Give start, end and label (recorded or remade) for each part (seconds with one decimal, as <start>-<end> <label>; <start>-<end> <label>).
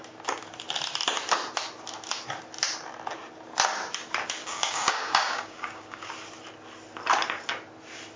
0.0-4.4 recorded; 4.4-6.1 remade; 6.1-8.2 recorded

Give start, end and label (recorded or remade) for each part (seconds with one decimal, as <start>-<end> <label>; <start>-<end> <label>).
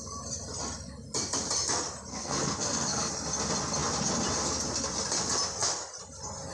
0.0-2.1 recorded; 2.1-3.1 remade; 3.1-6.5 recorded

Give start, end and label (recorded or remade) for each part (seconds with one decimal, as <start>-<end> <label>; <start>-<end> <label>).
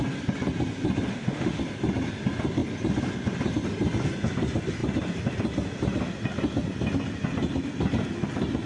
0.0-1.1 recorded; 1.1-1.6 remade; 1.6-8.7 recorded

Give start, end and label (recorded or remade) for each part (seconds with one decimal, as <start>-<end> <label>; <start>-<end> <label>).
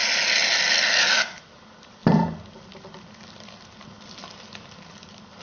0.0-1.4 remade; 1.4-2.0 recorded; 2.0-5.4 remade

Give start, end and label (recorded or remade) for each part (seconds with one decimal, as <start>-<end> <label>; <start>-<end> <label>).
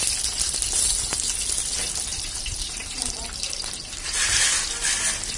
0.0-2.1 recorded; 2.1-3.7 remade; 3.7-5.4 recorded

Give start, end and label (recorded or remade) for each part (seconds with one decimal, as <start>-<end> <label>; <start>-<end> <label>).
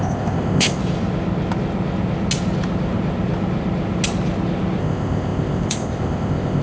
0.0-0.8 remade; 0.8-4.8 recorded; 4.8-6.6 remade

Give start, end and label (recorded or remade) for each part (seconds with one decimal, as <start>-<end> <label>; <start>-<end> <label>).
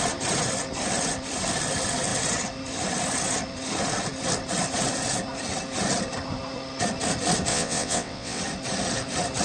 0.0-7.5 recorded; 7.5-8.4 remade; 8.4-9.4 recorded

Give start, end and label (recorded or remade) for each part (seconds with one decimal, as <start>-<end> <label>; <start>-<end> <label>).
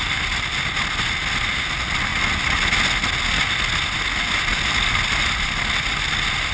0.0-6.5 recorded